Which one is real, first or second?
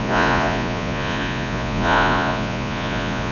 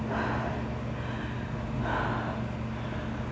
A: second